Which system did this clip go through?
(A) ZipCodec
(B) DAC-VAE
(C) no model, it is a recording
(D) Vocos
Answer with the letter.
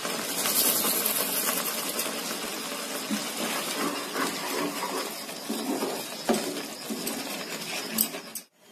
C